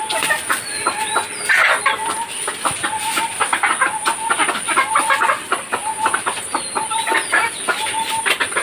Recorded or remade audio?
recorded